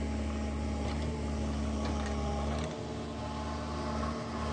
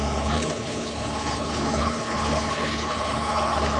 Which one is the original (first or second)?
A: first